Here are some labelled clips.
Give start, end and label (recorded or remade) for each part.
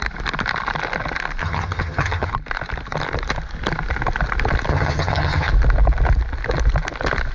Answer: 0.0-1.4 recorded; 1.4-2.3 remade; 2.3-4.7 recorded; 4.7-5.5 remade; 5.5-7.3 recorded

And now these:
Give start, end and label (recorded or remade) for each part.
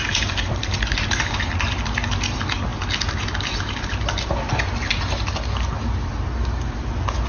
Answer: 0.0-7.3 recorded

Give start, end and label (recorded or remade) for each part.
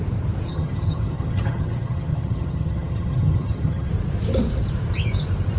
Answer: 0.0-0.5 recorded; 0.5-3.9 remade; 3.9-5.6 recorded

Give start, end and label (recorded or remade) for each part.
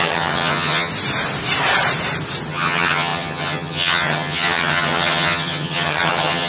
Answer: 0.0-0.9 remade; 0.9-2.5 recorded; 2.5-6.5 remade